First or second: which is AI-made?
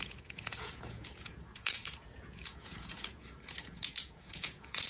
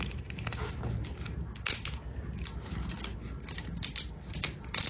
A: first